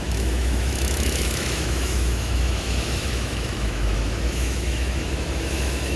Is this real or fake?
fake